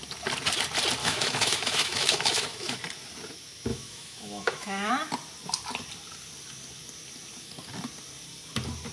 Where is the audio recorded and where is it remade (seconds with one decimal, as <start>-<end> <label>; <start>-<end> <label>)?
0.0-1.0 recorded; 1.0-2.8 remade; 2.8-3.7 recorded; 3.7-4.9 remade; 4.9-8.9 recorded